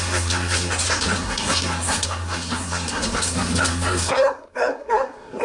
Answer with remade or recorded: remade